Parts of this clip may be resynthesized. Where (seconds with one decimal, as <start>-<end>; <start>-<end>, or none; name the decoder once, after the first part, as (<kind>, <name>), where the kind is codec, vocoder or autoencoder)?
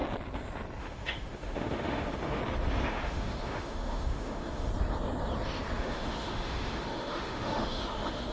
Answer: 0.8-2.4 (autoencoder, DAC-VAE); 2.9-4.7; 5.8-8.3